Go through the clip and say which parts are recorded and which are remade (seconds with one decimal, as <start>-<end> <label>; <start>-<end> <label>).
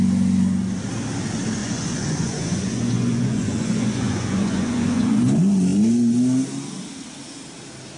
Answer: 0.0-1.6 recorded; 1.6-5.2 remade; 5.2-8.0 recorded